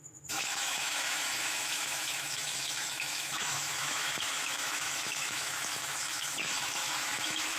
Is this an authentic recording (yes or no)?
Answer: no